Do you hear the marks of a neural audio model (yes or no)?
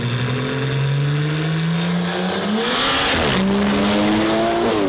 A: no